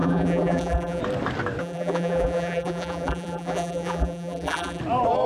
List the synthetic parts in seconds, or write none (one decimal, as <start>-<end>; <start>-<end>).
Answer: 0.0-1.0; 1.6-4.8